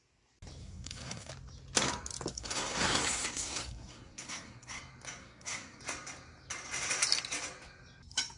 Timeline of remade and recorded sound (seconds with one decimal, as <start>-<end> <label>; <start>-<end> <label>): 0.0-0.6 recorded; 0.6-1.3 remade; 1.3-2.3 recorded; 2.3-4.8 remade; 4.8-5.2 recorded; 5.2-5.8 remade; 5.8-8.4 recorded